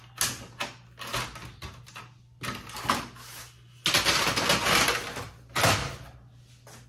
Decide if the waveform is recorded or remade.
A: recorded